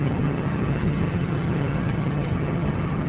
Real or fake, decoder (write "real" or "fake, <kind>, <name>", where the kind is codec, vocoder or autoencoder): fake, vocoder, HiFi-GAN